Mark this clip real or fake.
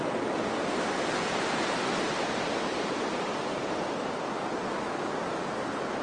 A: real